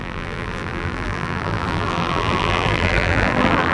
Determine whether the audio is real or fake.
fake